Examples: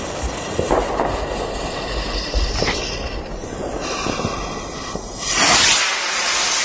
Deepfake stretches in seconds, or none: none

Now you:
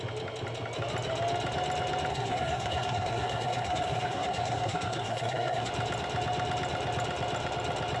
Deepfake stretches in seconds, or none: 2.1-5.7 (codec, SNAC)